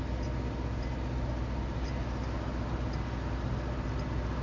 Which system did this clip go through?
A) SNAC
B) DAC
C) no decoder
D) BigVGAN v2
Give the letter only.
C